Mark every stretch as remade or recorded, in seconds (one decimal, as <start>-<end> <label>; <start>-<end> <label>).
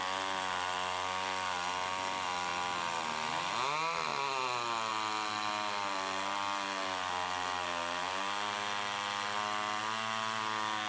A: 0.0-10.9 recorded